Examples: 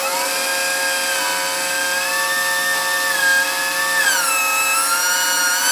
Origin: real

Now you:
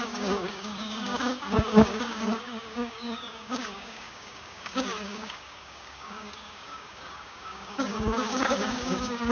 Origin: fake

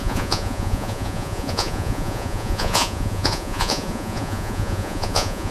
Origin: fake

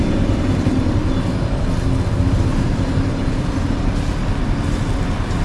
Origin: real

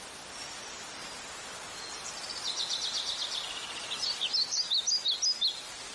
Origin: real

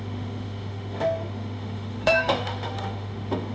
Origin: fake